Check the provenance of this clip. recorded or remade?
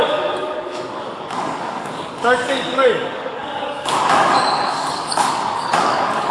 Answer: remade